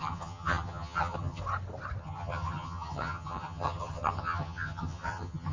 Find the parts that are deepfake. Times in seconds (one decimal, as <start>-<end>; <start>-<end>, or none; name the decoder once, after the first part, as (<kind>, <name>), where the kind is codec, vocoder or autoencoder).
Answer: 0.0-1.4 (vocoder, HiFi-GAN); 2.0-5.5